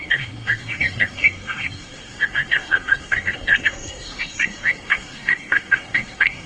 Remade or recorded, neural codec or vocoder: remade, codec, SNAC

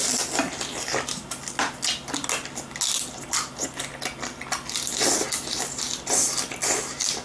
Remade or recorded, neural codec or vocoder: recorded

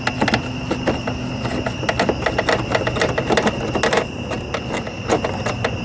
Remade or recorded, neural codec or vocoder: recorded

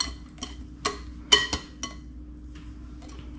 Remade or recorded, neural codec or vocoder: recorded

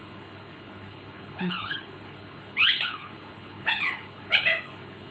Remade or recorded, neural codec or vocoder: remade, codec, HILCodec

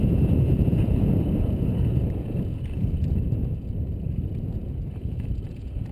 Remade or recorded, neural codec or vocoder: remade, vocoder, Vocos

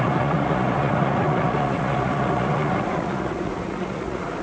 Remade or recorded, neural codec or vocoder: remade, vocoder, Vocos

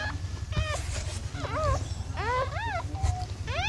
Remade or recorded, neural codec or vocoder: recorded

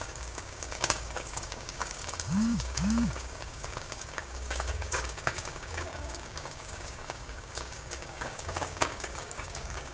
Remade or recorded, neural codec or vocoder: remade, codec, DAC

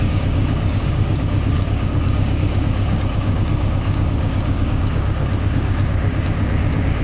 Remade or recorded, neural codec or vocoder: remade, codec, DAC